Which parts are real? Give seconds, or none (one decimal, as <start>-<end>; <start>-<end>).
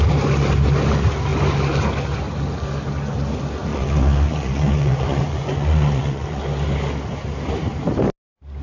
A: 0.0-3.7; 6.4-8.6